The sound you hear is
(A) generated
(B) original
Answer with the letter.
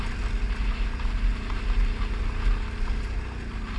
B